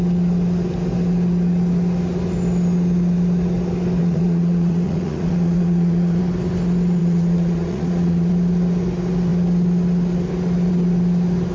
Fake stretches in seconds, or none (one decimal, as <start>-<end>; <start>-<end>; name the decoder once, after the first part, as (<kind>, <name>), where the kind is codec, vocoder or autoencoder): 4.0-6.2 (vocoder, Vocos); 7.0-8.3

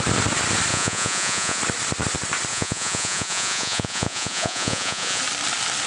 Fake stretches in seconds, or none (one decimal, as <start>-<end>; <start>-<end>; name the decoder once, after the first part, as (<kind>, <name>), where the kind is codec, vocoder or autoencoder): 0.7-1.6 (vocoder, Vocos); 2.5-5.2

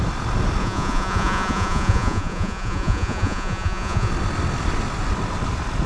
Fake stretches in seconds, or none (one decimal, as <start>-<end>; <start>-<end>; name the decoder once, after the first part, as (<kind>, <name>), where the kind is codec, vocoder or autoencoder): 0.6-4.1 (vocoder, Vocos)

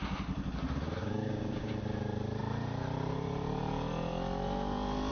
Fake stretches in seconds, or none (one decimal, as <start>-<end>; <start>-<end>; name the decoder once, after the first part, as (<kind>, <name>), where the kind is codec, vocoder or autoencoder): 1.0-1.7 (codec, DAC)